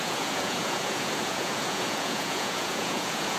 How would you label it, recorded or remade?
remade